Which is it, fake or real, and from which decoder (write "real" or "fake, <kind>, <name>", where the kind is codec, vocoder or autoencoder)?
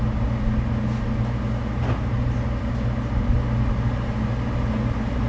real